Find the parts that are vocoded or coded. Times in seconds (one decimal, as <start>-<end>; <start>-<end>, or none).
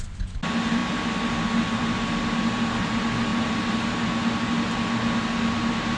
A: none